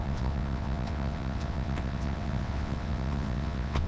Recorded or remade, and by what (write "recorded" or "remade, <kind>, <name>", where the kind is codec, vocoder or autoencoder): remade, vocoder, WaveNeXt